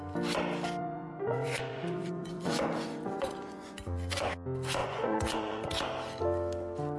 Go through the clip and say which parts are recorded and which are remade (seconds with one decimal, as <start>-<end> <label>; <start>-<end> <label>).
0.0-0.8 recorded; 0.8-4.3 remade; 4.3-4.8 recorded; 4.8-5.7 remade; 5.7-7.0 recorded